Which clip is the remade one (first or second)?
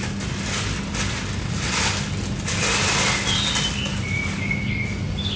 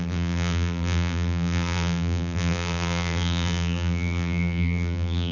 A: second